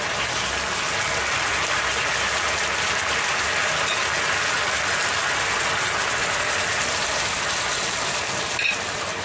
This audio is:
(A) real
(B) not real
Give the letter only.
A